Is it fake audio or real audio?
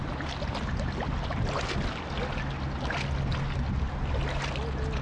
real